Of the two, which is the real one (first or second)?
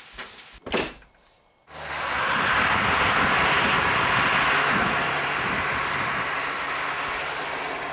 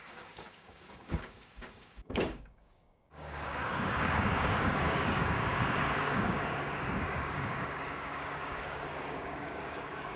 first